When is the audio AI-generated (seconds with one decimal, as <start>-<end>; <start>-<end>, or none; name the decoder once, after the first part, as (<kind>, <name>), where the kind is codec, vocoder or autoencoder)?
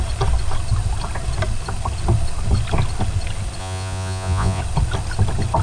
3.6-4.6 (vocoder, Vocos)